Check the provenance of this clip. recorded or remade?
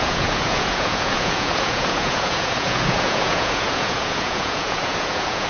remade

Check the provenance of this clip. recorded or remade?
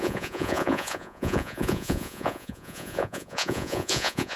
remade